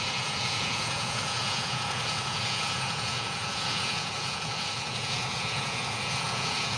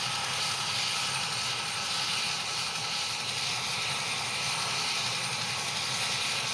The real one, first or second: second